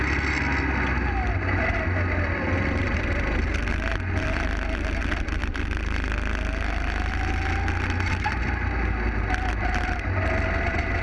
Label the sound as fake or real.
real